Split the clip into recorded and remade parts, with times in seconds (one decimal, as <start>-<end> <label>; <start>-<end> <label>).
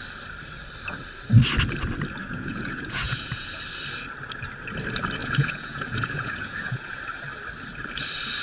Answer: 0.0-2.2 recorded; 2.2-3.6 remade; 3.6-5.2 recorded; 5.2-7.0 remade; 7.0-8.4 recorded